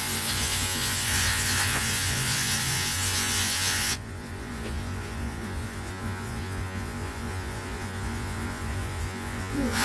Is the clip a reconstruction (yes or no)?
yes